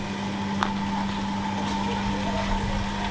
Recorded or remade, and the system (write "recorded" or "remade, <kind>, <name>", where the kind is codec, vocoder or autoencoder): recorded